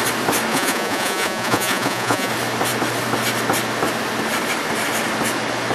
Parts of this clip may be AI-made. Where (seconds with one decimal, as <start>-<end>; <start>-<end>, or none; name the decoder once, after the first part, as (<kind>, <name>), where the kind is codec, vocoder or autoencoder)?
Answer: 0.5-2.3 (vocoder, Vocos)